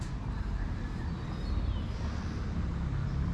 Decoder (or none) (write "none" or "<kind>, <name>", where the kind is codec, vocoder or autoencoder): none